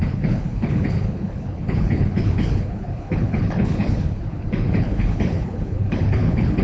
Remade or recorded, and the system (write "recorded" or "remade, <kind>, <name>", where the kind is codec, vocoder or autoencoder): remade, codec, HILCodec